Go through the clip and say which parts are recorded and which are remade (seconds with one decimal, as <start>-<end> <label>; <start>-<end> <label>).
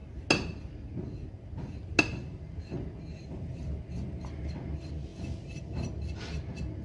0.0-6.8 recorded